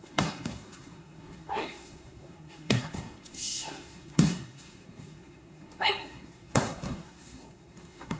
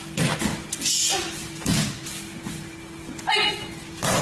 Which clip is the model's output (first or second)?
first